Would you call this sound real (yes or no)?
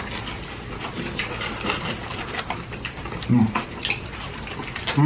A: yes